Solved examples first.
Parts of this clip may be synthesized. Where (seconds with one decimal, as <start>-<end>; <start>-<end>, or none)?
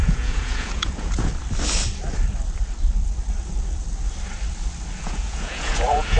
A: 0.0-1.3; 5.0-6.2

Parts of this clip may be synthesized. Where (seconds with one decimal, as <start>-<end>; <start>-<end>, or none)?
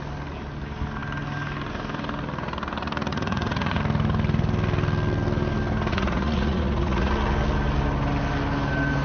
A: 3.1-3.8; 5.9-7.1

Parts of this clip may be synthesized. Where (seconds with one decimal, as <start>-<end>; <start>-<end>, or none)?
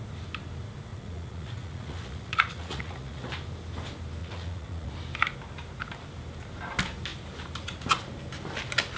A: 0.9-3.3; 4.2-4.9